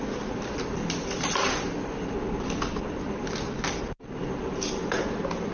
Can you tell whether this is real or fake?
real